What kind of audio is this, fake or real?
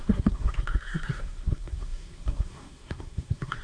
fake